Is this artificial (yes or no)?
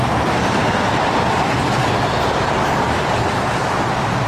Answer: yes